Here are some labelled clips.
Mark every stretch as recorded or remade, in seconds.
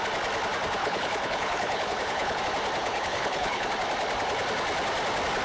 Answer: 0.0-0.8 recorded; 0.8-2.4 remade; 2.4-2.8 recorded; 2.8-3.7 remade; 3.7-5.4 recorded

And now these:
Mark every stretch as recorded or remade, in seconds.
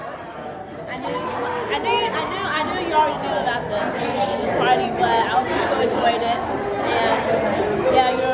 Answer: 0.0-8.3 recorded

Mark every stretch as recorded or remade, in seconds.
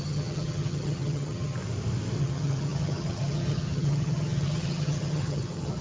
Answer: 0.0-1.6 remade; 1.6-2.2 recorded; 2.2-5.8 remade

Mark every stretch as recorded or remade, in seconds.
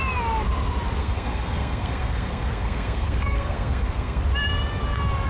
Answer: 0.0-1.0 recorded; 1.0-4.2 remade; 4.2-5.3 recorded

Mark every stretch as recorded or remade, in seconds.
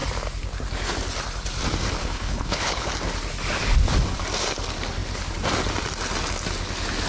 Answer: 0.0-2.0 recorded; 2.0-2.9 remade; 2.9-7.1 recorded